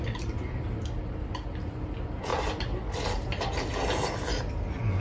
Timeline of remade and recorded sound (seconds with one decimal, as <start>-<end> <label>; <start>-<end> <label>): 0.0-5.0 recorded